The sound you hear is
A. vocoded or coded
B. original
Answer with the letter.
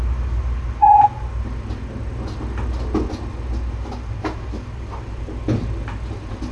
B